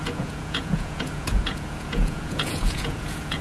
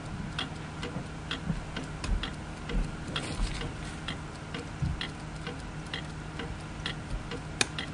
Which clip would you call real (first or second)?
second